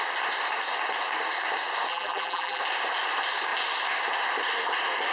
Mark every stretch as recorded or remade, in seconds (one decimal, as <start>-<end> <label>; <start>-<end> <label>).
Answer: 0.0-1.9 recorded; 1.9-2.6 remade; 2.6-5.1 recorded